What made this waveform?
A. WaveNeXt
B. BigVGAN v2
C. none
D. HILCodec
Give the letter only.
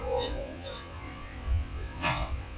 A